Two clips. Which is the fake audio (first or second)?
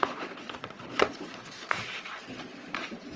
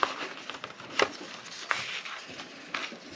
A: first